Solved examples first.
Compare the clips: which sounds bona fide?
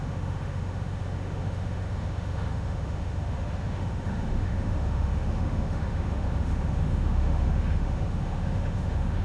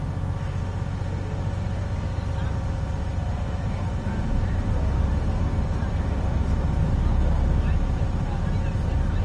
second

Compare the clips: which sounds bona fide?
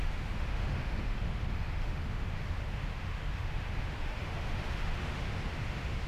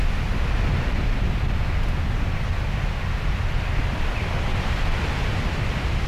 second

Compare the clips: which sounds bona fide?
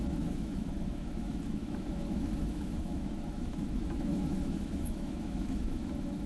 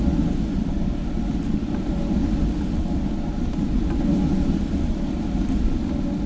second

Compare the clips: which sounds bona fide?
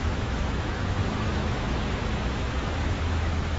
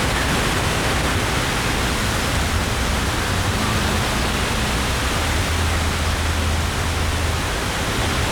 second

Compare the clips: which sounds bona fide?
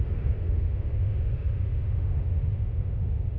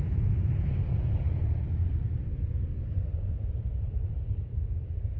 second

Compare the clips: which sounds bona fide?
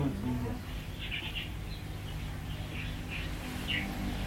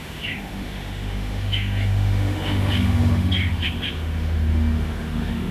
first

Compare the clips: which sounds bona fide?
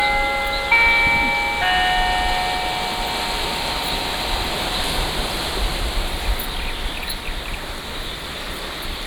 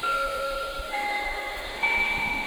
first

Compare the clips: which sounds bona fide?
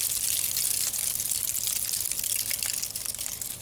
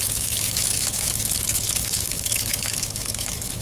first